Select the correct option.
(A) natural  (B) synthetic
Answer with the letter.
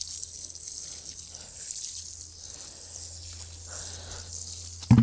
A